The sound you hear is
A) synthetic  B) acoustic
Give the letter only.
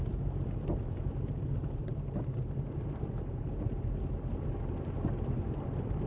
B